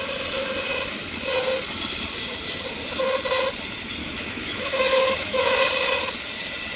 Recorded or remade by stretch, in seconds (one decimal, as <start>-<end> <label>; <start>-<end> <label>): 0.0-4.0 recorded; 4.0-5.6 remade; 5.6-6.8 recorded